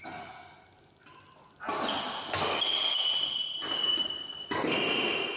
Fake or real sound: real